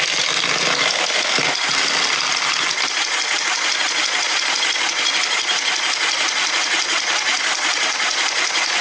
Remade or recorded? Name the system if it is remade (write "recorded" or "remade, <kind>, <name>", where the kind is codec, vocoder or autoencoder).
recorded